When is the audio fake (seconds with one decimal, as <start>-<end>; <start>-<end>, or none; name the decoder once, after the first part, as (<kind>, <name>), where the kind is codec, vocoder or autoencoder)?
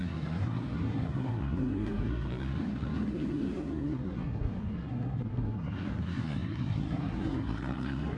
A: 0.0-8.2 (codec, SNAC)